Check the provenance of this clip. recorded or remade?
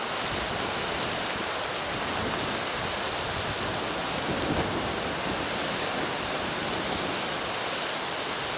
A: recorded